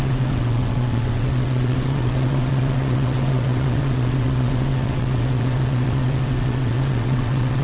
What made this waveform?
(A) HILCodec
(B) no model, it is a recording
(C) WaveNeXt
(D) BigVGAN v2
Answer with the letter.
C